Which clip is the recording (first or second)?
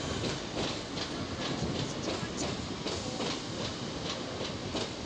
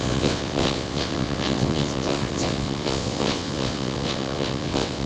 first